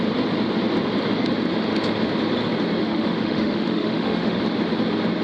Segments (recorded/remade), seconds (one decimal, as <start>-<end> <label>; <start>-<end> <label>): 0.0-2.8 recorded; 2.8-4.4 remade; 4.4-5.2 recorded